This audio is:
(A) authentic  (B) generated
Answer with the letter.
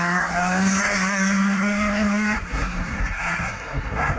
B